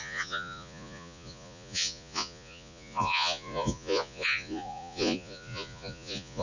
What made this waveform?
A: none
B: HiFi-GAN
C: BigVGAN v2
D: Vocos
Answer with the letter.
D